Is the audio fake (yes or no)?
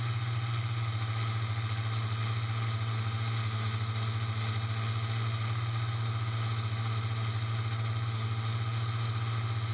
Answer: no